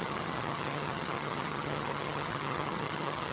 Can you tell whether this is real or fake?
fake